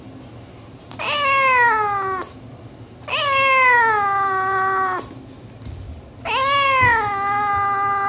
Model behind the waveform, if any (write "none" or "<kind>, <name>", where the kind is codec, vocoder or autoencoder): none